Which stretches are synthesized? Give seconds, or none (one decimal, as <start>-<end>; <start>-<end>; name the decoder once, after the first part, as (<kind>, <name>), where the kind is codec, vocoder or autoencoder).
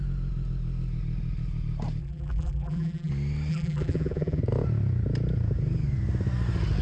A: 2.0-3.1 (vocoder, BigVGAN v2); 3.5-4.4